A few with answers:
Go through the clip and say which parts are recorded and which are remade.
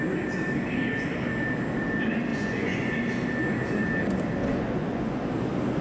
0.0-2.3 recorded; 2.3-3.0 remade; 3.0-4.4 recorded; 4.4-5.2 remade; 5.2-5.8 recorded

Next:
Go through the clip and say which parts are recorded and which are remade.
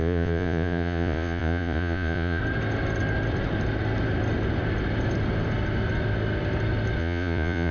0.0-2.4 remade; 2.4-7.0 recorded; 7.0-7.7 remade